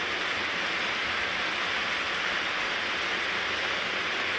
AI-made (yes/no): no